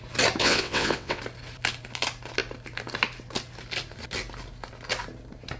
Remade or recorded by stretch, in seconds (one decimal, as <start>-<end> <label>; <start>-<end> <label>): 0.0-0.4 recorded; 0.4-1.2 remade; 1.2-5.6 recorded